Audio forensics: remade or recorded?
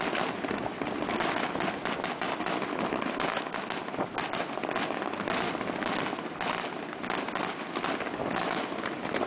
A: recorded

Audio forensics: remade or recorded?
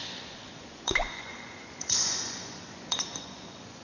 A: remade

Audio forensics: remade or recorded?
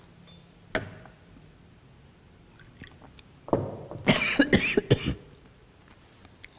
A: recorded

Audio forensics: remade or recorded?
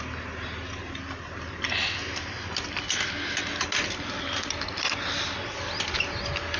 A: recorded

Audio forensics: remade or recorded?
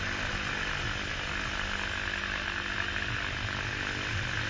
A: recorded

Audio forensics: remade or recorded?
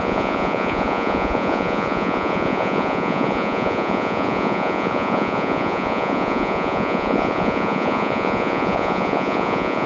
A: remade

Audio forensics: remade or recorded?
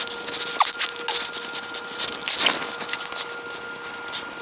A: recorded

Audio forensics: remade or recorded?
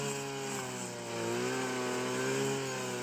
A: recorded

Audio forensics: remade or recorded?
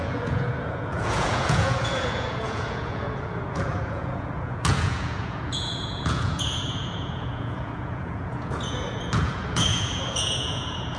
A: remade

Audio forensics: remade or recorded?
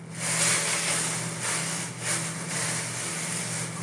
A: recorded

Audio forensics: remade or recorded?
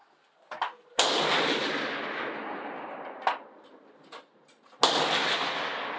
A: recorded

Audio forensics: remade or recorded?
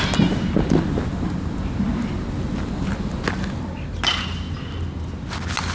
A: recorded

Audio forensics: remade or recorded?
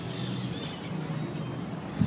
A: recorded